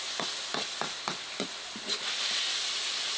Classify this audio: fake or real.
real